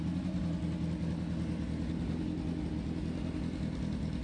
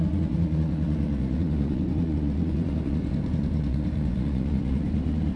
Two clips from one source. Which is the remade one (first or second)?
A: second